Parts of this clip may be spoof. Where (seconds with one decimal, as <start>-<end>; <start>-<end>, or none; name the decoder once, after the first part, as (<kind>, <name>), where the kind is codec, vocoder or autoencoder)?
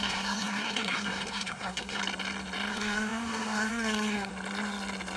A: 0.0-2.0 (codec, SNAC); 2.7-4.3